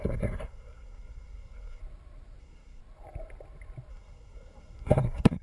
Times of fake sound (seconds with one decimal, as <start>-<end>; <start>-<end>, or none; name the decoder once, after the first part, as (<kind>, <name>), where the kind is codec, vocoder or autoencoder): 0.0-1.8 (codec, SNAC); 2.4-2.8; 3.9-5.4